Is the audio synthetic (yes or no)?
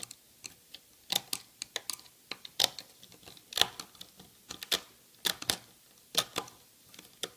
no